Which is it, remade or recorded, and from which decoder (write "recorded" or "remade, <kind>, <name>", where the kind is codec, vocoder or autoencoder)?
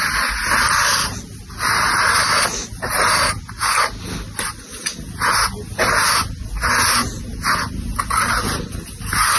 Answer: recorded